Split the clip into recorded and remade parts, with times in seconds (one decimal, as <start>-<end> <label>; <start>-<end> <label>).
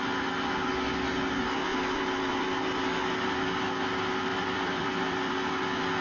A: 0.0-1.7 recorded; 1.7-2.4 remade; 2.4-4.3 recorded; 4.3-5.3 remade; 5.3-6.0 recorded